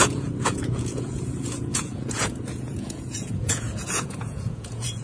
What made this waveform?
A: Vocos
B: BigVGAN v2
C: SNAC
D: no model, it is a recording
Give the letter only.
A